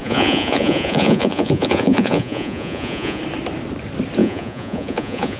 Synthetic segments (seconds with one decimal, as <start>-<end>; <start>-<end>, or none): 0.0-3.2; 4.2-5.4